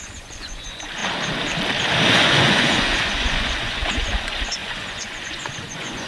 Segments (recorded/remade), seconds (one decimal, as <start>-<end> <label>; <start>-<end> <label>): 0.0-1.0 remade; 1.0-2.1 recorded; 2.1-6.1 remade